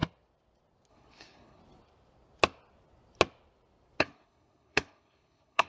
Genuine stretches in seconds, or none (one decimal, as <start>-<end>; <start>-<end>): 0.0-0.9; 1.6-4.0